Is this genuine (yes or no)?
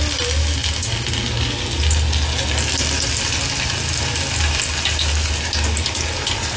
yes